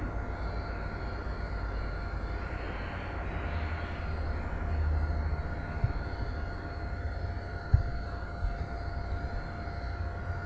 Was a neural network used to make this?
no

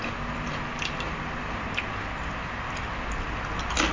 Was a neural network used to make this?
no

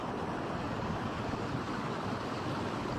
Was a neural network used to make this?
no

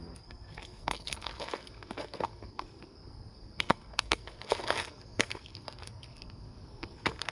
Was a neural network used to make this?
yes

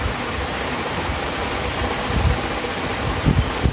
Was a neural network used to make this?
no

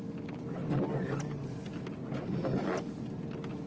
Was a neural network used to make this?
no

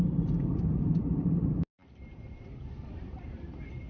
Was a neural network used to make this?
yes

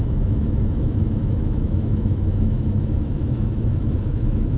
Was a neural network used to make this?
yes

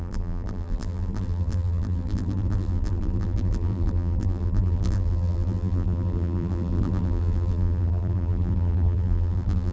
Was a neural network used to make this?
yes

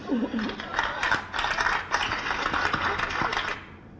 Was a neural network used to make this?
no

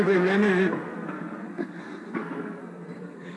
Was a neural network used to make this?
yes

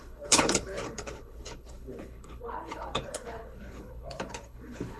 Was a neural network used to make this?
yes